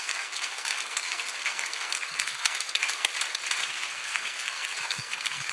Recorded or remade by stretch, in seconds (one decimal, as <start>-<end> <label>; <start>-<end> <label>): 0.0-3.1 remade; 3.1-3.7 recorded; 3.7-5.5 remade